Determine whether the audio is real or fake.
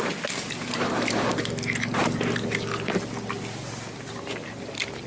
real